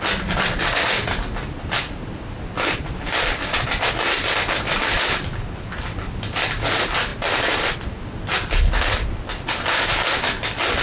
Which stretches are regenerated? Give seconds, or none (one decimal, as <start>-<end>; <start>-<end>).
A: none